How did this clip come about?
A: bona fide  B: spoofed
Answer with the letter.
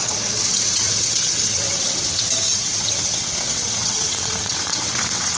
B